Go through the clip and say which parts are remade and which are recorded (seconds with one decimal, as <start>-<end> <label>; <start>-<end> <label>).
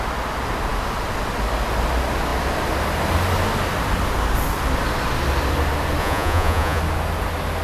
0.0-6.0 recorded; 6.0-6.8 remade; 6.8-7.6 recorded